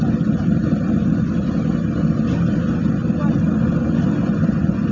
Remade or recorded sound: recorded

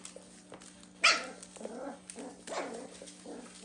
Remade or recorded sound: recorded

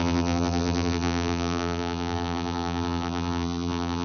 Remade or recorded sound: remade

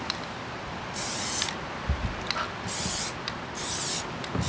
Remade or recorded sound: recorded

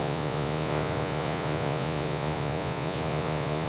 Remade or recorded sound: remade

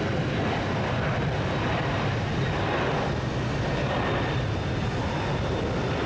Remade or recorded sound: recorded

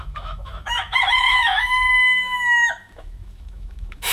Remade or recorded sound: remade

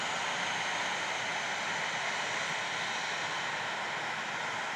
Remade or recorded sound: recorded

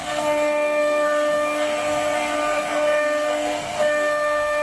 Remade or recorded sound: remade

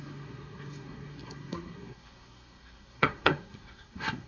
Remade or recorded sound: remade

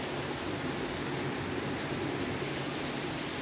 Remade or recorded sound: recorded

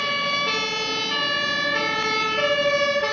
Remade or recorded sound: recorded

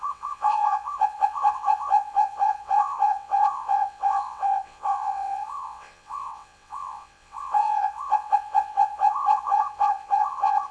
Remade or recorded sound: remade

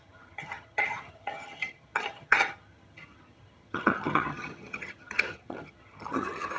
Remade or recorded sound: remade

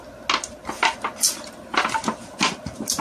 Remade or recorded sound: recorded